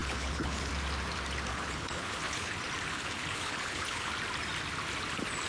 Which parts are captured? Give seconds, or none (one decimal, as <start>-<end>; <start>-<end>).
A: 0.7-1.5; 2.5-2.9; 4.1-5.5

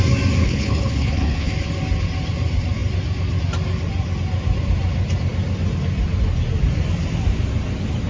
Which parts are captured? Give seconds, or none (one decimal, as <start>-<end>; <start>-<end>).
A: 0.0-0.4; 1.5-8.1

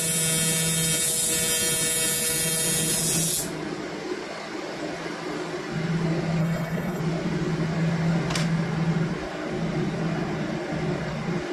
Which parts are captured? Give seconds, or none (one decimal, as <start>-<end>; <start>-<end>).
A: 0.0-6.4; 7.0-11.5

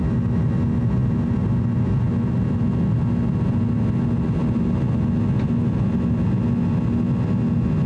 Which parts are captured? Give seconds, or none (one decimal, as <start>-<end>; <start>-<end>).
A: 0.0-7.9